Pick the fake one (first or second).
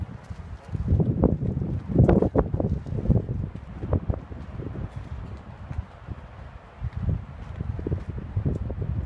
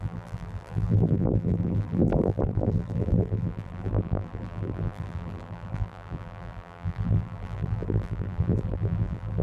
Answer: second